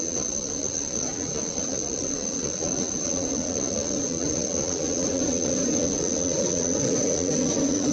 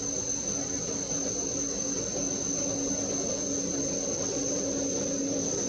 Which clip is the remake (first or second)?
first